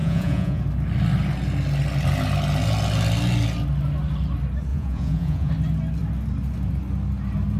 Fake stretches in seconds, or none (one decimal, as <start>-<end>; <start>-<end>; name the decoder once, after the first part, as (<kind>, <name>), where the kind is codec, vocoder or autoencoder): 0.0-0.6 (vocoder, Vocos); 4.7-5.5